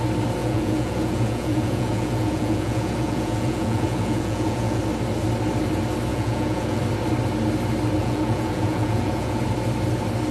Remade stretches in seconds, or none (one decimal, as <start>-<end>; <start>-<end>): 0.4-4.8; 6.1-6.8; 8.0-9.4